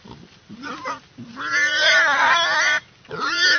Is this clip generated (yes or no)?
no